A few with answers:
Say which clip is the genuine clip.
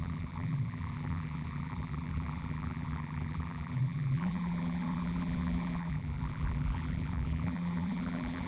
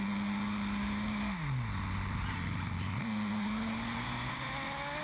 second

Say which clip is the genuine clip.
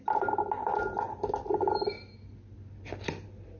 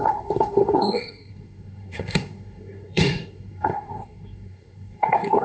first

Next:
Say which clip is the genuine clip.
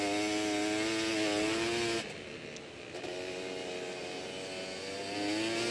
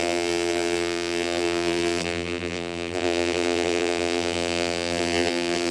first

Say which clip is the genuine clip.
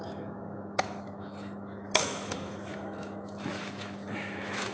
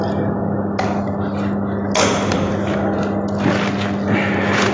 second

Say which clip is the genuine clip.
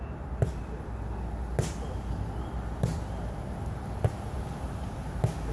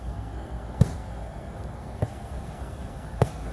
first